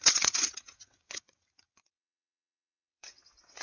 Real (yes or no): no